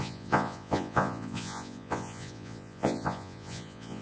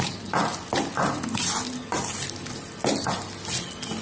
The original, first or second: second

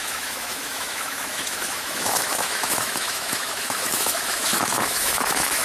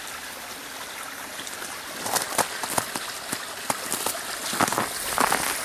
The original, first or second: second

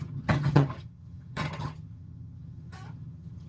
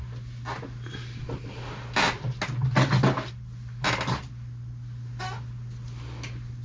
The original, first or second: second